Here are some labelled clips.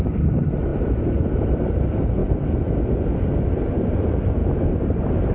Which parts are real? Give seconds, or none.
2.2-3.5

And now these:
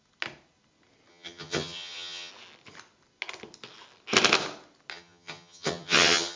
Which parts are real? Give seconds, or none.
0.0-1.1; 2.3-4.9

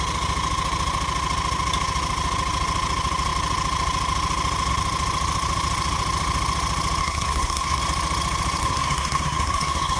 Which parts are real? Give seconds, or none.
0.0-7.0; 7.8-8.6

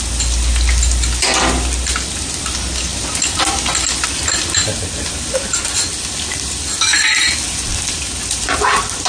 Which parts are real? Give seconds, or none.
0.0-9.1

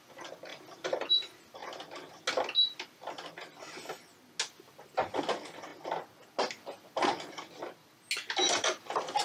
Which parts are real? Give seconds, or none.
0.0-0.5; 1.1-9.2